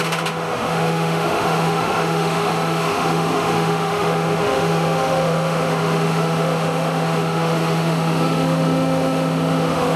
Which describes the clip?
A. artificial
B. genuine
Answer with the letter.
A